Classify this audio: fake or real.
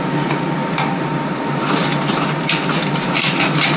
real